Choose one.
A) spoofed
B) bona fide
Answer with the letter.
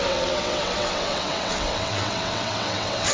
A